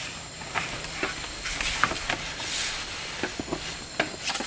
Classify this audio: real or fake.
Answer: real